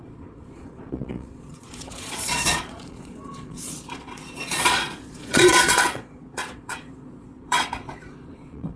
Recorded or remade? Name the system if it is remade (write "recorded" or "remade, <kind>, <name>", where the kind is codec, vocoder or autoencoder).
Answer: remade, vocoder, Vocos